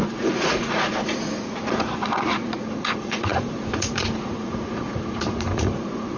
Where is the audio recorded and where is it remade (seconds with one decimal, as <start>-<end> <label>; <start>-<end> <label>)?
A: 0.0-6.2 remade

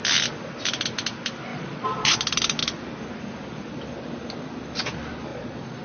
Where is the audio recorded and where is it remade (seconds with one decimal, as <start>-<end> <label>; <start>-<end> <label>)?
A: 0.0-1.5 recorded; 1.5-2.2 remade; 2.2-5.3 recorded; 5.3-5.8 remade

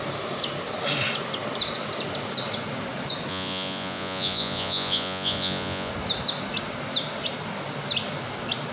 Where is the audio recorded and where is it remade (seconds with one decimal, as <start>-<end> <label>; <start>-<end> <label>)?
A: 0.0-3.3 recorded; 3.3-5.9 remade; 5.9-8.7 recorded

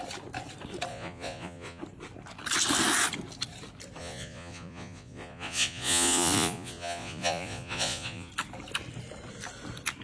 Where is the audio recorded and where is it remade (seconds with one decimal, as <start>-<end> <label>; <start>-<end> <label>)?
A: 0.0-0.9 recorded; 0.9-1.8 remade; 1.8-4.0 recorded; 4.0-8.3 remade; 8.3-10.0 recorded

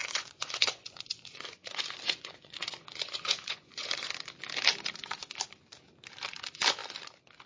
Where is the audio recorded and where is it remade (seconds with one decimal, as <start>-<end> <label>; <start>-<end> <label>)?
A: 0.0-4.1 remade; 4.1-7.5 recorded

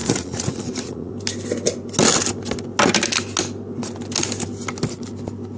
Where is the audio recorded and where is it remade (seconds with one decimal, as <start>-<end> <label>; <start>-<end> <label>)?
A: 0.0-1.1 remade; 1.1-5.6 recorded

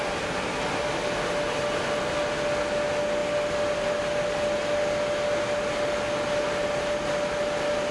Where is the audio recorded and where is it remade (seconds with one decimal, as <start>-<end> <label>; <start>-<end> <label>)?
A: 0.0-7.9 recorded

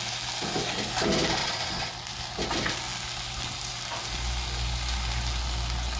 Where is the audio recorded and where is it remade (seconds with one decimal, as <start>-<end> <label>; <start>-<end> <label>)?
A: 0.0-1.4 recorded; 1.4-1.9 remade; 1.9-6.0 recorded